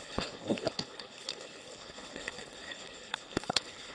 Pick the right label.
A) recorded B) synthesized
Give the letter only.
B